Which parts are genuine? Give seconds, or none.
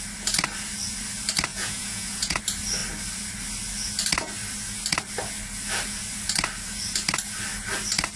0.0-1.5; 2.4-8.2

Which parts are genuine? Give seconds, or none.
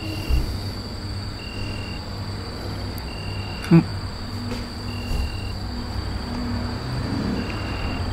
0.0-8.1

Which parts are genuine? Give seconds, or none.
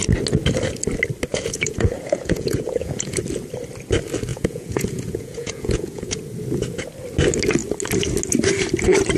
0.0-1.3; 3.2-4.3; 6.2-9.2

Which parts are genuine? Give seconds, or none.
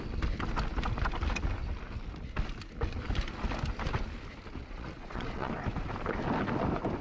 0.0-4.6; 5.5-7.0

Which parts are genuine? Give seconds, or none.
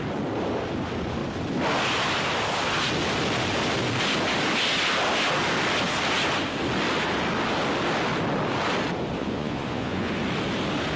0.0-9.2; 10.1-11.0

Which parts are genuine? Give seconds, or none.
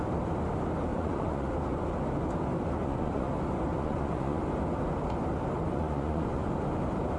0.0-0.9; 1.5-2.8; 3.3-3.7; 4.4-5.7; 6.6-7.2